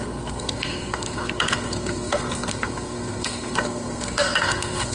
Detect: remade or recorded remade